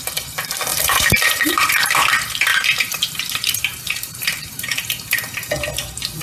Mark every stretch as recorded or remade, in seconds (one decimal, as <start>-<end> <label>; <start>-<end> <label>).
0.0-0.7 recorded; 0.7-1.7 remade; 1.7-2.5 recorded; 2.5-4.9 remade; 4.9-6.2 recorded